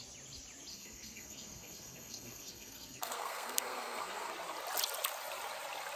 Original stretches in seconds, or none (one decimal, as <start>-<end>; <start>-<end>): 0.0-0.7; 4.3-6.0